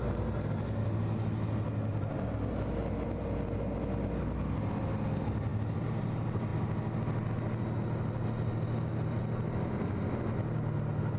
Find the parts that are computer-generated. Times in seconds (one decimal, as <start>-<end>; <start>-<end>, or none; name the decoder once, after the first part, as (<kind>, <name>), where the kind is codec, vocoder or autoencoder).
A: none